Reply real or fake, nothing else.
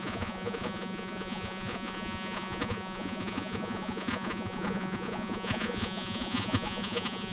fake